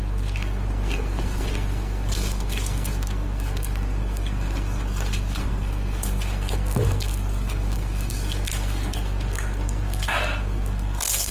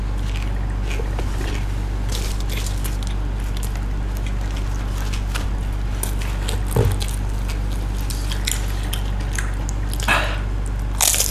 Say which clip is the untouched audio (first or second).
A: second